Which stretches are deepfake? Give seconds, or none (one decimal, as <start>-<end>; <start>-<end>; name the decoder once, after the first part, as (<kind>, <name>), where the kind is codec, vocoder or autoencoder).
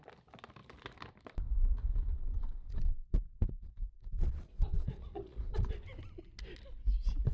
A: 1.9-5.7 (vocoder, Vocos)